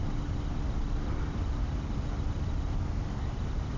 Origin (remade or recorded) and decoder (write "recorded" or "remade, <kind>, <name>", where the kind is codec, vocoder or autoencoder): recorded